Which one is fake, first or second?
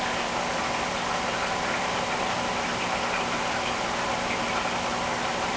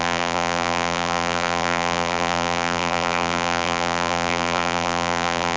second